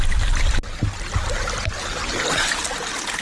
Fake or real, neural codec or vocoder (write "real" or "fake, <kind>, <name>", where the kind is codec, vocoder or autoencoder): real